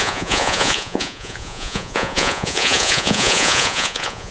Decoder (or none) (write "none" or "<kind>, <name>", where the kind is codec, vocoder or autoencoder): vocoder, Vocos